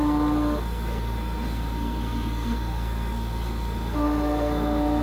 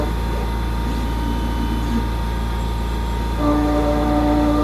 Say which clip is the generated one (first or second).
first